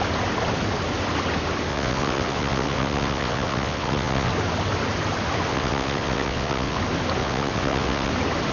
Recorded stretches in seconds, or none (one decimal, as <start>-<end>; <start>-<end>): 0.0-1.7; 4.3-5.5; 6.8-7.2; 8.1-8.5